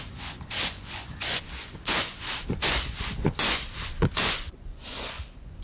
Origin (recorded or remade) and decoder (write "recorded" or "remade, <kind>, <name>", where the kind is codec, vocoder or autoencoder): remade, vocoder, Vocos